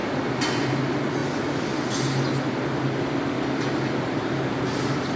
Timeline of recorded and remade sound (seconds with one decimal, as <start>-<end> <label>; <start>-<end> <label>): 0.0-5.2 recorded

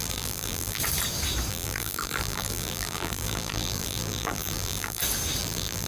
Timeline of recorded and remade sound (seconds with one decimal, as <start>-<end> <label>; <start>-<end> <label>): 0.0-0.8 remade; 0.8-1.5 recorded; 1.5-5.0 remade; 5.0-5.4 recorded; 5.4-5.9 remade

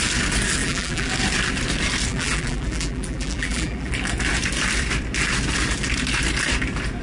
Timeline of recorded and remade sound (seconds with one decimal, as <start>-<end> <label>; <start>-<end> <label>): 0.0-0.6 recorded; 0.6-1.1 remade; 1.1-2.1 recorded; 2.1-3.9 remade; 3.9-7.0 recorded

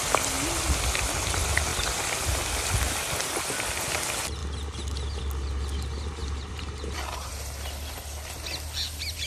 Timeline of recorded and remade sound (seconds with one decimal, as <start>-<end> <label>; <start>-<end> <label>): 0.0-6.2 recorded; 6.2-7.3 remade; 7.3-9.3 recorded